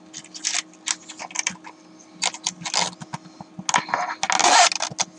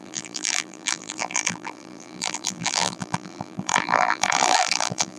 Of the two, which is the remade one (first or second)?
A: second